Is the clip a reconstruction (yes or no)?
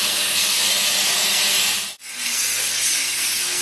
yes